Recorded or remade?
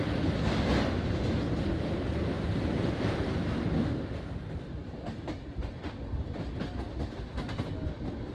recorded